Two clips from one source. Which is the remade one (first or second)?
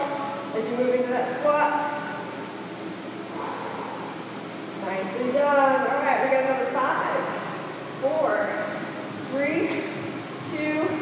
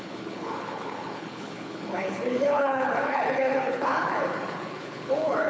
second